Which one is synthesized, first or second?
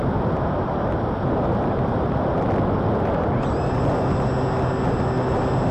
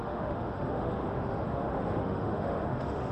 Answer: second